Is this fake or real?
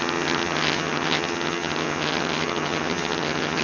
fake